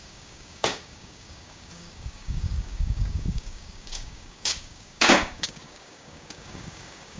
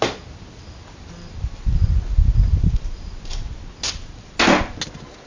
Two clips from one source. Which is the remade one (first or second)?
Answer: first